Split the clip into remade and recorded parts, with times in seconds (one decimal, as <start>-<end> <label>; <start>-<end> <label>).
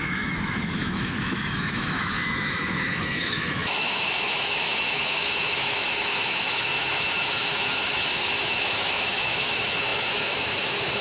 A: 0.0-11.0 remade